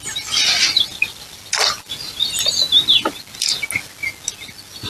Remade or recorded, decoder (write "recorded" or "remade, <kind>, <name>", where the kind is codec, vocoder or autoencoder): recorded